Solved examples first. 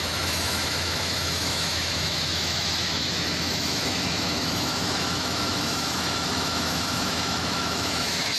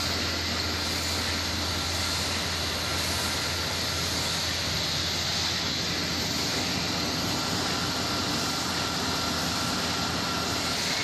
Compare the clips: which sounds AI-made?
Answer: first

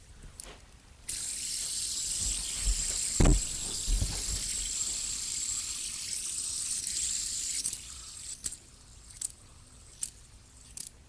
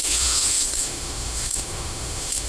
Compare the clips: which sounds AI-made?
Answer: second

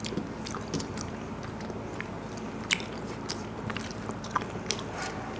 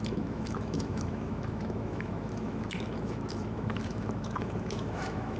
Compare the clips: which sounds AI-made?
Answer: second